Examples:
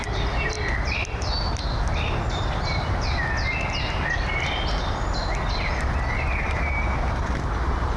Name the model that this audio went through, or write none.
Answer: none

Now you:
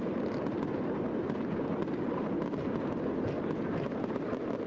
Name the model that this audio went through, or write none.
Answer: none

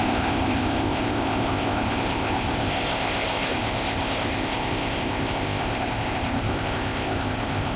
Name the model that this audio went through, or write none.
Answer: codec, ZipCodec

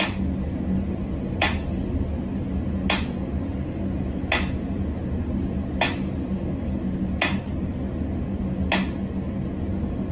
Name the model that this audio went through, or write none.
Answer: none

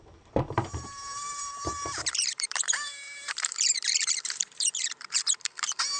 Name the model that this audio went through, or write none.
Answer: vocoder, BigVGAN v2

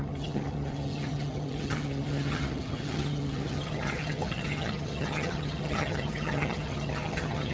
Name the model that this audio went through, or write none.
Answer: vocoder, HiFi-GAN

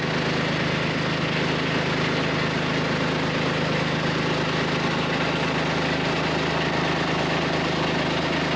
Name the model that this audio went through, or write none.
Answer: none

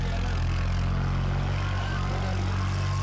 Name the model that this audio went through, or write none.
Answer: none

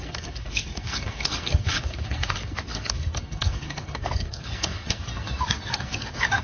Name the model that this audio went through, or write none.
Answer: codec, SNAC